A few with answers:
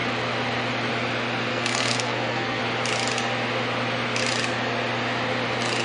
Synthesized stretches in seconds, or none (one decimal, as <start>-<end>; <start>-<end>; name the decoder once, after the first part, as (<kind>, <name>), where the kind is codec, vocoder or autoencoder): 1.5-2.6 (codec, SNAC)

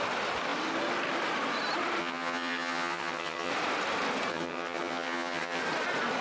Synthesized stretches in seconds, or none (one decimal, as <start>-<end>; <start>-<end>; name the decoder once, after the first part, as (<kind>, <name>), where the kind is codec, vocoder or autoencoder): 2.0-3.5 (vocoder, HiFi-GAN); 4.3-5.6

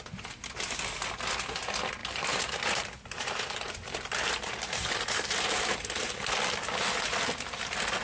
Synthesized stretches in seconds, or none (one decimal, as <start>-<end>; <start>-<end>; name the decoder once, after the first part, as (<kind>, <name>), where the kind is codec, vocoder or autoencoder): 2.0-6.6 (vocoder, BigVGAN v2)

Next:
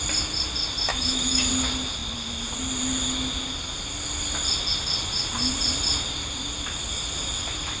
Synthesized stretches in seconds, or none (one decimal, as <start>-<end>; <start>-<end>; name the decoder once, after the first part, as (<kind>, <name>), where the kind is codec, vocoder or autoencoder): 0.9-1.5 (autoencoder, DAC-VAE)